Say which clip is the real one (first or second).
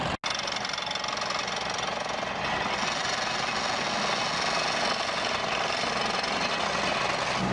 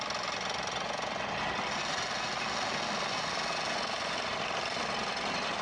first